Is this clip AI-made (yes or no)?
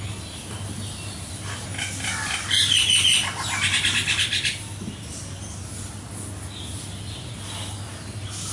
no